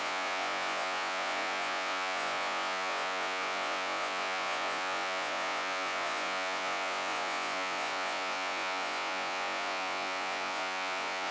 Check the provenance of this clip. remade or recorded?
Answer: remade